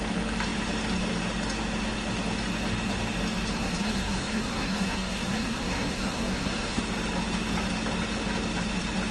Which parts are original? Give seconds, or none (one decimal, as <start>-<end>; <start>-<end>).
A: 0.0-3.5; 6.8-9.1

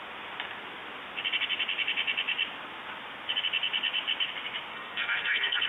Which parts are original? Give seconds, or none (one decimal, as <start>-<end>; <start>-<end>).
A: 0.0-4.7